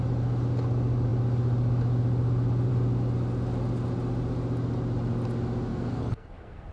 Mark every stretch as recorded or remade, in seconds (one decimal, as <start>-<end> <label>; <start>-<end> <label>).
0.0-5.7 recorded; 5.7-6.7 remade